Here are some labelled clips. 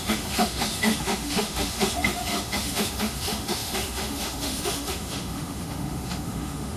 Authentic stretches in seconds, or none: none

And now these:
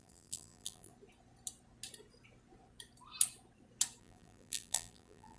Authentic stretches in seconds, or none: 0.9-4.0

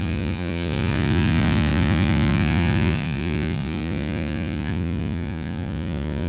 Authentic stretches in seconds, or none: none

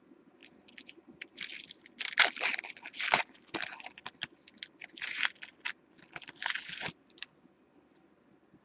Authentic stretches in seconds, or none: 0.0-8.6

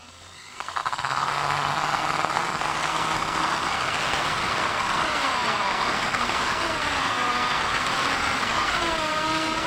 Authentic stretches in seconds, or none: none

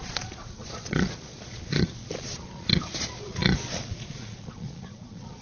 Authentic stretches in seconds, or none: none

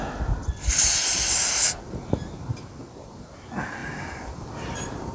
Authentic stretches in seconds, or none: 0.0-3.8

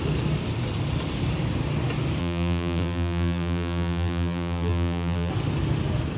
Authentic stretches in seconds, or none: 0.0-2.2; 5.3-6.2